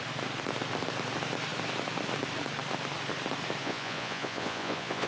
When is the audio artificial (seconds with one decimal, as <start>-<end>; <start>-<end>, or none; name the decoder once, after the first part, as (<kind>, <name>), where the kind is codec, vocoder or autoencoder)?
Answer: 3.6-5.1 (vocoder, Vocos)